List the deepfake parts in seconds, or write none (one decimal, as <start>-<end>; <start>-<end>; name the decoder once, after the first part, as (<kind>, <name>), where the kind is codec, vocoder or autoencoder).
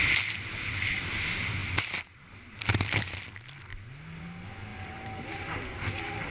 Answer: 1.6-3.3 (vocoder, BigVGAN v2); 4.7-5.3